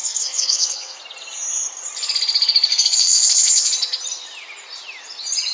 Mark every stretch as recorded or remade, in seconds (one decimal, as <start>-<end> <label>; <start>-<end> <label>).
0.0-1.0 remade; 1.0-2.7 recorded; 2.7-3.7 remade; 3.7-5.5 recorded